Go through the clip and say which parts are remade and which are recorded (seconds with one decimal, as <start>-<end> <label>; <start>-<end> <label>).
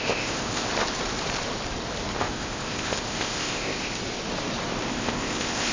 0.0-0.7 remade; 0.7-2.2 recorded; 2.2-4.0 remade; 4.0-4.9 recorded; 4.9-5.7 remade